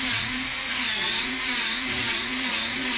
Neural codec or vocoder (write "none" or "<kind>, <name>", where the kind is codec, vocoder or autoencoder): vocoder, Vocos